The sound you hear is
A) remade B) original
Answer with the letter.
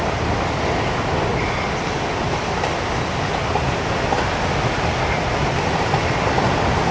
B